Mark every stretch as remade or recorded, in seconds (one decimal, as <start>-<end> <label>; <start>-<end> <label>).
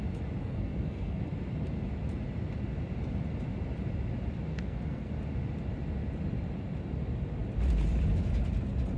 0.0-0.4 recorded; 0.4-1.2 remade; 1.2-4.5 recorded; 4.5-5.1 remade; 5.1-9.0 recorded